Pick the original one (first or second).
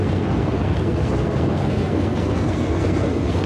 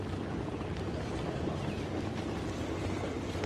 second